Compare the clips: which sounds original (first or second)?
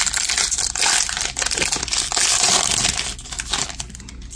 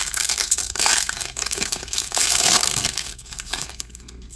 first